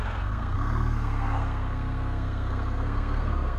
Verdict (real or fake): fake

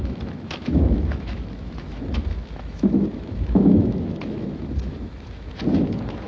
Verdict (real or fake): fake